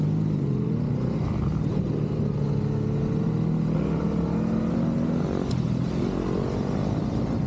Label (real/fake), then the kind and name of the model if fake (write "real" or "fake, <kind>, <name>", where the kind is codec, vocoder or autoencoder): real